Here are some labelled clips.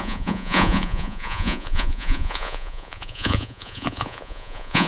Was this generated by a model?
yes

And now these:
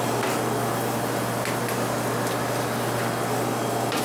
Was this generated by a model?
no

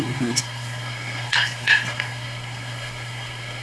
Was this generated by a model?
yes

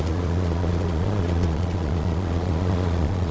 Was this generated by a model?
yes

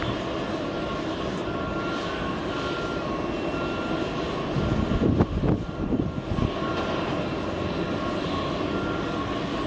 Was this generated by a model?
no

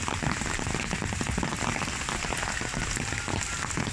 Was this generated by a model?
no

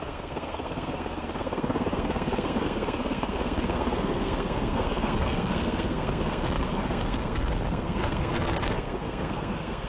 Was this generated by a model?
yes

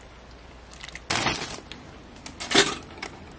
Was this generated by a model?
no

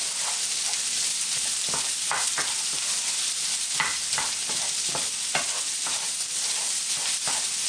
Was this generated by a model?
no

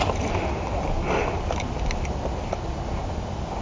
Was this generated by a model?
no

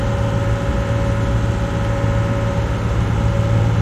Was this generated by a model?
no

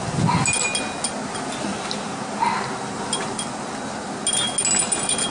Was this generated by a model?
no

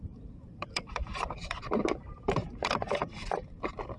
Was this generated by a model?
yes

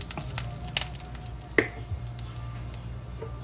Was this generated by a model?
no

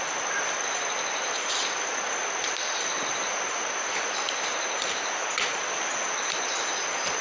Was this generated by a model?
no